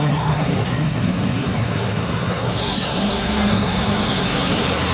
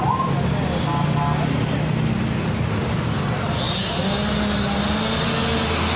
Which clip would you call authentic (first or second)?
second